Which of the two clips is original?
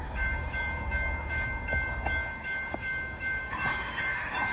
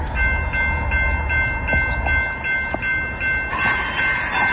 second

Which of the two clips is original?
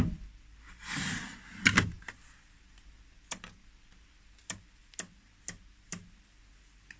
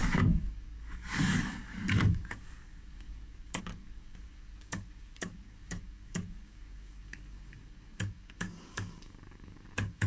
first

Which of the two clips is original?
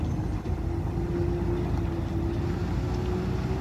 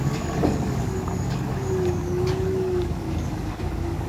first